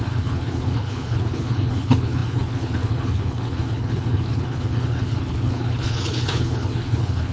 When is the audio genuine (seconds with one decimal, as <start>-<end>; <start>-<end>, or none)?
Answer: none

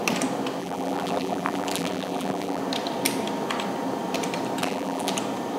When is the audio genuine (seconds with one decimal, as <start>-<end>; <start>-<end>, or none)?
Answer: 0.0-0.6; 2.6-4.6; 5.1-5.6

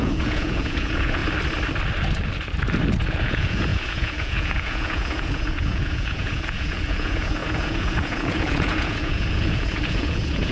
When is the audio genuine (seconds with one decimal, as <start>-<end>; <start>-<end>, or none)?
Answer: 1.2-3.1

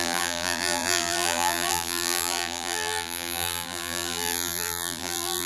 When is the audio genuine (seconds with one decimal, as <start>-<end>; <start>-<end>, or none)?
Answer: none

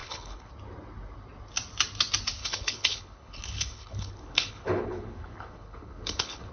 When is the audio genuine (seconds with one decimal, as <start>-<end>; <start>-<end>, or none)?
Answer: 0.5-2.4

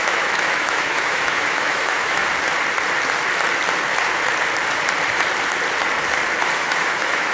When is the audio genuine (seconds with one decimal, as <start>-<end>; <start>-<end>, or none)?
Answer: 2.2-6.6

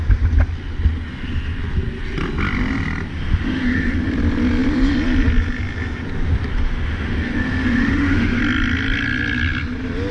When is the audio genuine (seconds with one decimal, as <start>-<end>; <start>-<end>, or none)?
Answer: 0.0-3.1; 4.1-6.5; 8.4-10.1

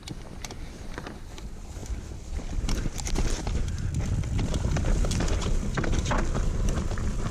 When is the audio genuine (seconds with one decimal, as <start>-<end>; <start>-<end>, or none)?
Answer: none